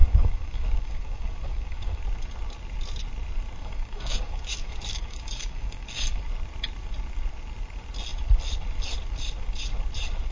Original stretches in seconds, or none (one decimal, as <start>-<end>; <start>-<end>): 2.0-3.6; 6.2-10.3

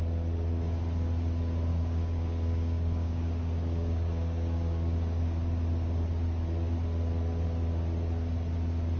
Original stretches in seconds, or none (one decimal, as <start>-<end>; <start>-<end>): 0.0-1.7; 5.2-9.0